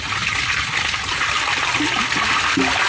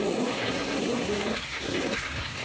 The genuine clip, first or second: first